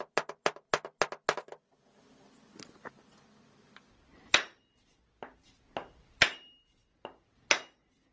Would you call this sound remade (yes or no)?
no